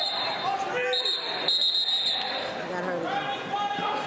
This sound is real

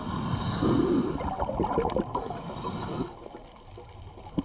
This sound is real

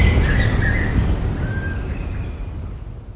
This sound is real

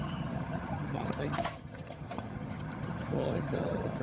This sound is fake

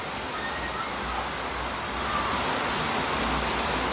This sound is real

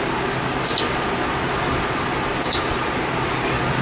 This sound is real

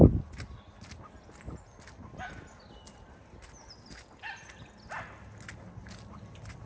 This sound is real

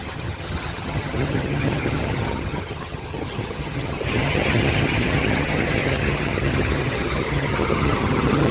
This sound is fake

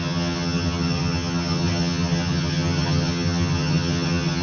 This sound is fake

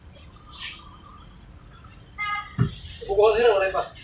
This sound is real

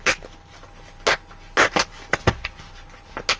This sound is real